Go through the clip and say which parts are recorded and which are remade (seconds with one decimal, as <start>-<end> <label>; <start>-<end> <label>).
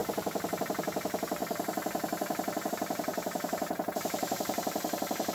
0.0-0.6 recorded; 0.6-1.4 remade; 1.4-2.7 recorded; 2.7-5.3 remade